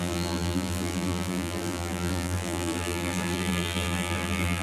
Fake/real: fake